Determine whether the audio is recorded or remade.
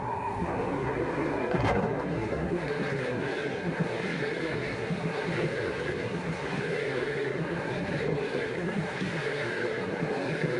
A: remade